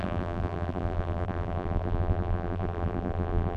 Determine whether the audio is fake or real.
fake